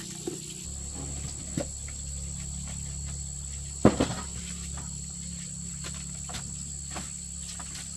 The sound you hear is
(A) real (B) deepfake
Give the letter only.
A